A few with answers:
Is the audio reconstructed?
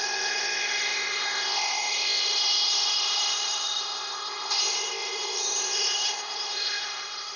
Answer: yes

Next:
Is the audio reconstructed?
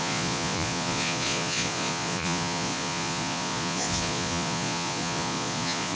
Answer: yes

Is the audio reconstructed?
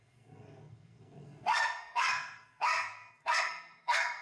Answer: yes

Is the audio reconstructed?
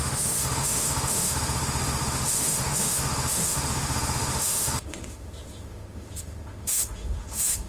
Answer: yes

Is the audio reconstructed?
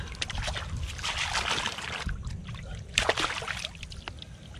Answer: no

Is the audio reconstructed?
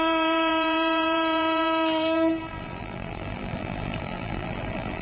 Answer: yes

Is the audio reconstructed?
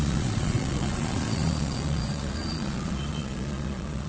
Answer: yes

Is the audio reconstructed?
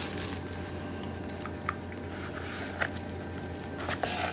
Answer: no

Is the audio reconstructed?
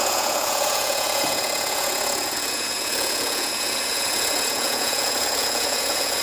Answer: yes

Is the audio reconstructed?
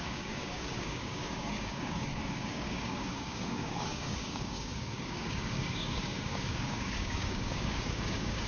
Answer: yes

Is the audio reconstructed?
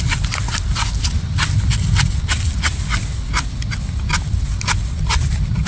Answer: no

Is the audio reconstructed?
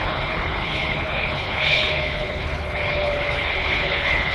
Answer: yes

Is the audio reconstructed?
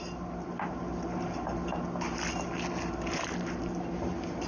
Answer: no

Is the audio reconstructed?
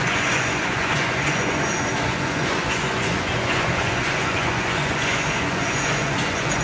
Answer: yes